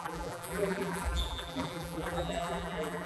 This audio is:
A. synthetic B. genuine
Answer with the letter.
A